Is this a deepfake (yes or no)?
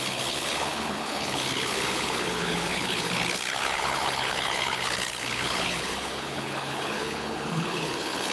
yes